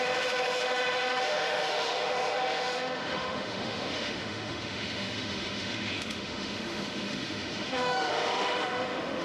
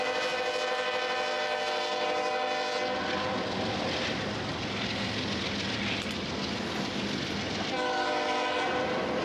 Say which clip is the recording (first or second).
second